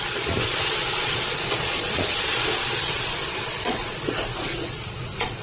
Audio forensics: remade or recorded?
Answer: remade